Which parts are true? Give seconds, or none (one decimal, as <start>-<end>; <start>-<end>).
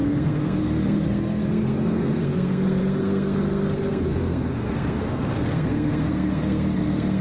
none